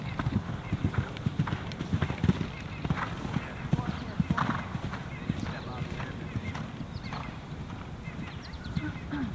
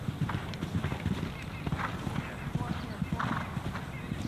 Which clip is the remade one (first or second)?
first